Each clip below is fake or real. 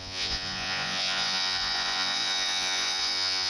fake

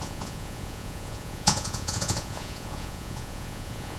fake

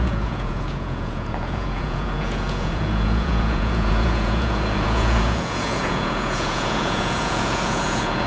fake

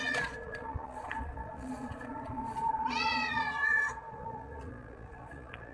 fake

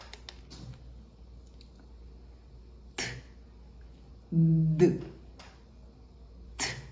real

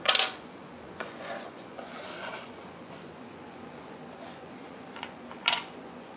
fake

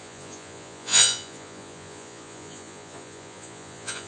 fake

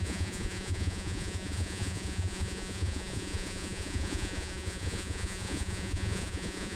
fake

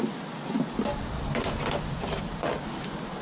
real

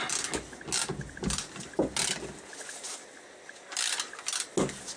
real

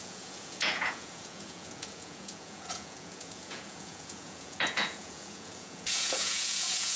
fake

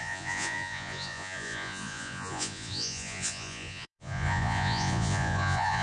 fake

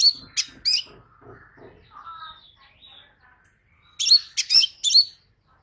real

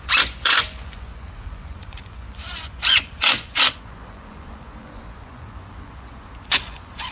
fake